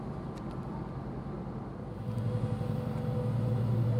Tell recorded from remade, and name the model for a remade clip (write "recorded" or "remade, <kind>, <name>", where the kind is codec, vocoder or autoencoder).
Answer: recorded